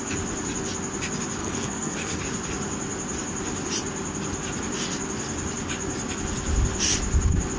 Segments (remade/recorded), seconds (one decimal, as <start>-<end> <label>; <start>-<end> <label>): 0.0-1.4 recorded; 1.4-2.2 remade; 2.2-7.6 recorded